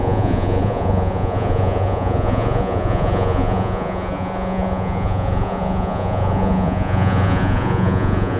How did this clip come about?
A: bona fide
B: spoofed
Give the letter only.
B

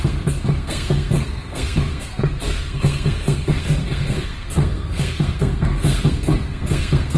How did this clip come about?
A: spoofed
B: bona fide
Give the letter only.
A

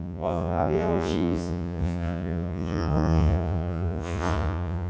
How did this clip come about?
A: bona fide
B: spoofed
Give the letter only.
B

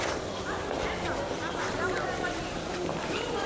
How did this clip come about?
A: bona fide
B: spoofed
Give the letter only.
A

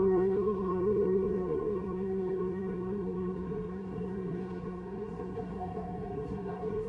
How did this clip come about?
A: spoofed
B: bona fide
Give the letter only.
A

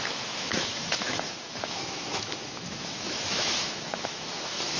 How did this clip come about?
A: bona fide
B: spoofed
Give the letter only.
B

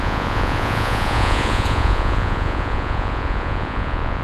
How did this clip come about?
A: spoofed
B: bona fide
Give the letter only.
A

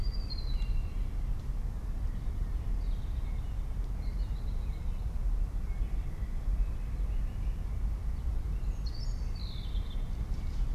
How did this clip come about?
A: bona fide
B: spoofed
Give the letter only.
B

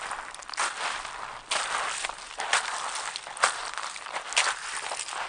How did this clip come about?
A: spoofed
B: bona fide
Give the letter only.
B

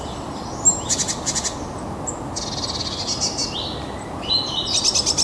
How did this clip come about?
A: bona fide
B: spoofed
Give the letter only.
A